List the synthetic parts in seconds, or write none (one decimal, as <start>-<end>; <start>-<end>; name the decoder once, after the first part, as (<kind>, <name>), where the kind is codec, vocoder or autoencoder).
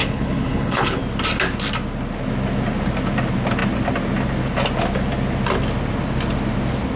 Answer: 0.0-1.0 (codec, HILCodec)